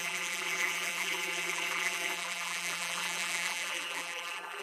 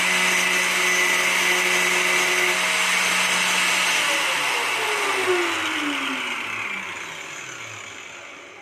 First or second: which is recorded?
second